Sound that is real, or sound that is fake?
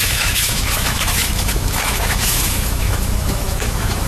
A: fake